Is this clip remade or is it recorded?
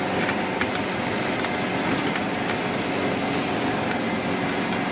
recorded